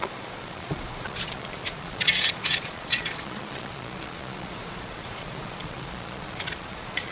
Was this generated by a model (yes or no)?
yes